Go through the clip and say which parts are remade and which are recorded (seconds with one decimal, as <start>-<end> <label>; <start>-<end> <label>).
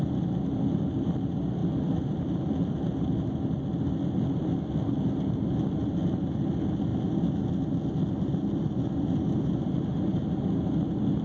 0.0-11.2 recorded